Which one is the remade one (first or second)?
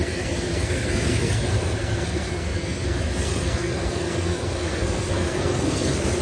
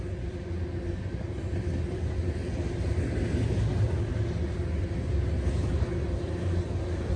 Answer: first